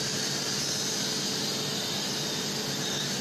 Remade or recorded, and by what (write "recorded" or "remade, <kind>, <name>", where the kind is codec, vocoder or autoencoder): recorded